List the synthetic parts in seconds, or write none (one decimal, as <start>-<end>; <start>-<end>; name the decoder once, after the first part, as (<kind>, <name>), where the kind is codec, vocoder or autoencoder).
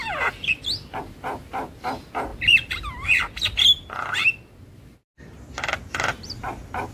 none